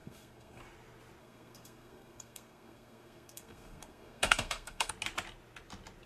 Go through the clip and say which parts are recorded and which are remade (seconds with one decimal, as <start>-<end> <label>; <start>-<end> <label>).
0.0-0.6 remade; 0.6-1.2 recorded; 1.2-4.9 remade; 4.9-6.1 recorded